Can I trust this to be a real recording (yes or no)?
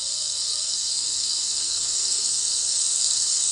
no